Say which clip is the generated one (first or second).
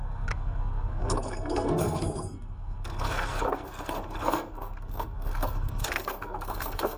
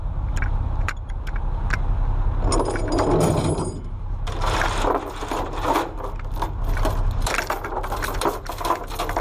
first